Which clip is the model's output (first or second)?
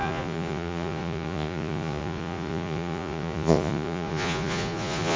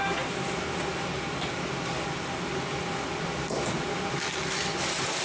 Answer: first